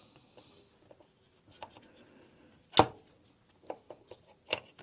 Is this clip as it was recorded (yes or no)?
yes